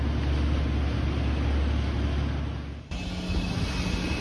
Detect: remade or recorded recorded